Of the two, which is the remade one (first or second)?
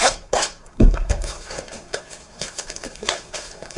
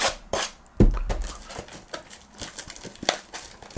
first